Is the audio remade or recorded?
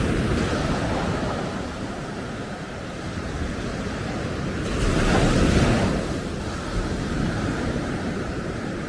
remade